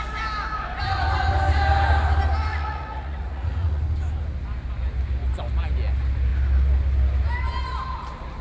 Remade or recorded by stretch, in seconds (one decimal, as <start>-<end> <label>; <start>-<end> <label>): 0.0-2.5 recorded; 2.5-3.8 remade; 3.8-8.4 recorded